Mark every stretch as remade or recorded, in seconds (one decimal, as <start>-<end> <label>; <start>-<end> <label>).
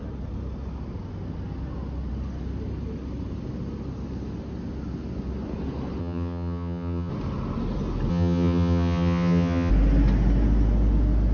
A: 0.0-6.0 recorded; 6.0-7.1 remade; 7.1-8.1 recorded; 8.1-9.7 remade; 9.7-11.3 recorded